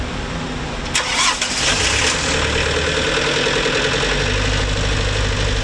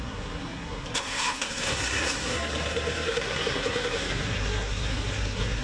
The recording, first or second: first